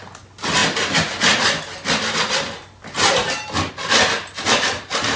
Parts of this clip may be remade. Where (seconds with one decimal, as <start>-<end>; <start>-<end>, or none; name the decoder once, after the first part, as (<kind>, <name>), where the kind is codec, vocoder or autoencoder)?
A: none